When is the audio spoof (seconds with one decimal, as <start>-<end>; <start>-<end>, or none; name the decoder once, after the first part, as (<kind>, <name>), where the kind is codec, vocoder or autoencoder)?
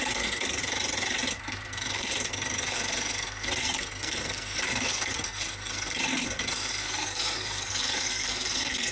0.0-0.6 (codec, SNAC); 1.3-8.9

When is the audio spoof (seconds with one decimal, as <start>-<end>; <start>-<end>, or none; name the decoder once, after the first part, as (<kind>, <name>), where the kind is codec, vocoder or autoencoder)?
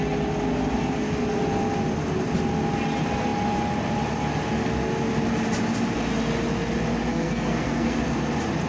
7.1-8.0 (codec, SNAC)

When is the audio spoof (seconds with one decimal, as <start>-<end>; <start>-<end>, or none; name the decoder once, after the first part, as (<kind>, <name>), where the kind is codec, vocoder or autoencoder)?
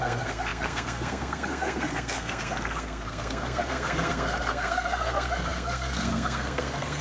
0.0-7.0 (codec, SNAC)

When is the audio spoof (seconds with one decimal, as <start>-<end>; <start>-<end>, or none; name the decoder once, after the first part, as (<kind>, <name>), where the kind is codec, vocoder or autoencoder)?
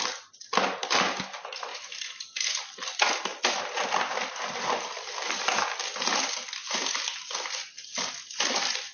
none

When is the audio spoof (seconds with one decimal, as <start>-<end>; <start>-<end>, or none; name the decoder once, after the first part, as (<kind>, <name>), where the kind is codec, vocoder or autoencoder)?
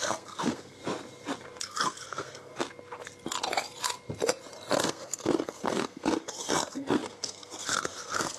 0.0-0.8 (codec, SNAC); 1.6-2.5; 4.8-8.4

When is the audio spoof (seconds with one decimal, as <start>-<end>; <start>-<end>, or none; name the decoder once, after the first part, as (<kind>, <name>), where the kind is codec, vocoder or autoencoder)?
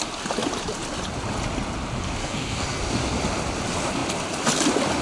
2.2-2.8 (codec, SNAC)